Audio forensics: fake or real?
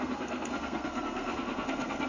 fake